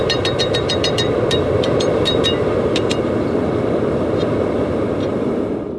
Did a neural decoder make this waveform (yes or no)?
no